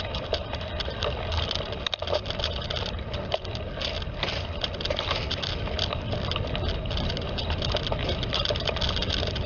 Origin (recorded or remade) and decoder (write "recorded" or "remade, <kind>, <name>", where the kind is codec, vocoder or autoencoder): recorded